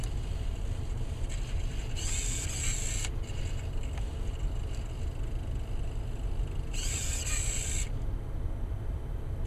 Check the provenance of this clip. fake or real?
real